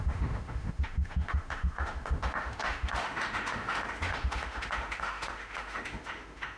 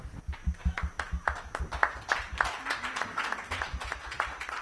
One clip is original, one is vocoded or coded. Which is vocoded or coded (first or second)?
first